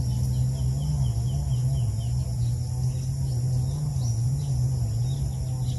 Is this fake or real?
real